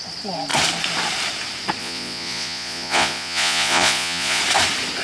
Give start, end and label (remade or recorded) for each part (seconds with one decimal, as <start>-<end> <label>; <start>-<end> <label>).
0.0-1.8 recorded; 1.8-4.4 remade; 4.4-5.0 recorded